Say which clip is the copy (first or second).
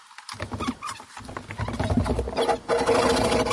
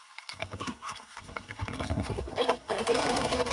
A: second